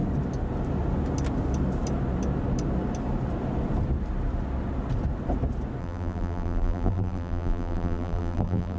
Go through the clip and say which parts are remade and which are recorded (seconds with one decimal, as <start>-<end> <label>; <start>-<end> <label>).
0.0-5.8 recorded; 5.8-8.8 remade